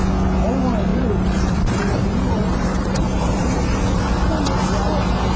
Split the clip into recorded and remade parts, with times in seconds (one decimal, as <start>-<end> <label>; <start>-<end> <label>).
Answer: 0.0-0.9 recorded; 0.9-3.8 remade; 3.8-5.4 recorded